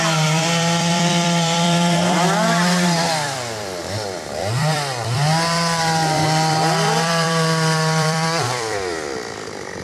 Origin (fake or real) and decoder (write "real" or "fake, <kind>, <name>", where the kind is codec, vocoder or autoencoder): fake, vocoder, BigVGAN v2